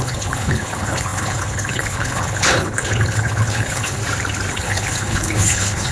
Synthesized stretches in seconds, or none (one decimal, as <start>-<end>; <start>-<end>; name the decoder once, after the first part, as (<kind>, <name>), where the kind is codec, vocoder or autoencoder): 0.0-4.0 (codec, HILCodec); 4.5-5.9